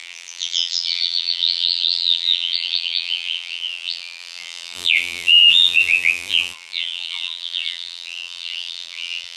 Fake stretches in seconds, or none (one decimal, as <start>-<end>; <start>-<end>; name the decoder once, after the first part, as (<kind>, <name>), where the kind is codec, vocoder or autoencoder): 0.0-9.4 (vocoder, BigVGAN v2)